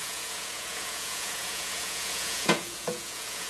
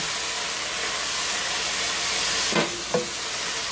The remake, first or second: first